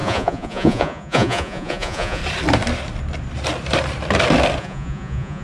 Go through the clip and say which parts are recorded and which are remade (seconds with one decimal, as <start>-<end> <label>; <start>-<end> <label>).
0.0-2.2 remade; 2.2-4.6 recorded; 4.6-5.4 remade